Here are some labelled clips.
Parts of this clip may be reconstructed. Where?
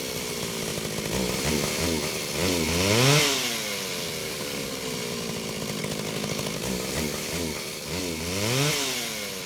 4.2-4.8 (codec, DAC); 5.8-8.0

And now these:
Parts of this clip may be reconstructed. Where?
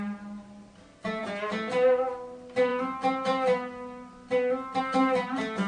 none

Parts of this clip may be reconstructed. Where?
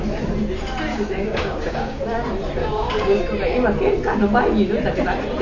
0.9-2.0 (codec, DAC); 2.6-3.2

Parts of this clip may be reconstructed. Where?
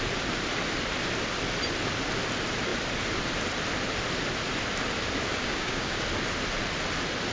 5.3-6.0 (codec, DAC)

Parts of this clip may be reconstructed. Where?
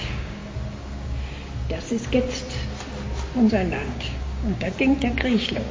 0.0-0.4 (codec, DAC); 3.5-5.7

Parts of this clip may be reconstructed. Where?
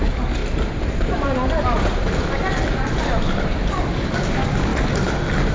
0.0-0.4 (codec, DAC); 3.7-4.7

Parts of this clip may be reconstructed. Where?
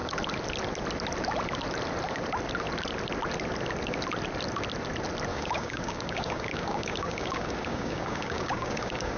5.3-9.2 (codec, DAC)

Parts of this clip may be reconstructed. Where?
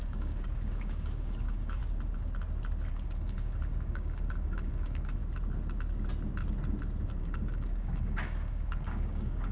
0.0-1.8 (codec, DAC); 2.9-5.2; 7.2-9.5